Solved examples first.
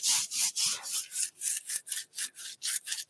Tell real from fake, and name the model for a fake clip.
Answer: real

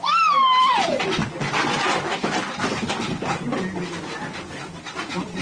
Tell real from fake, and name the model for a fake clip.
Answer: real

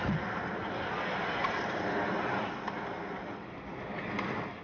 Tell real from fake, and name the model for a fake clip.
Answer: real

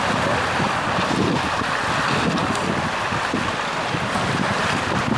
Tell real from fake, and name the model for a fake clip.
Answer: real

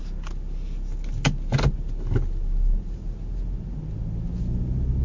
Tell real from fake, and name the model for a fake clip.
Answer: real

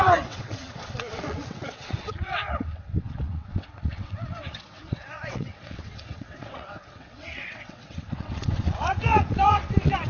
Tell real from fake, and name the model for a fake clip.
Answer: fake, vocoder, WaveNeXt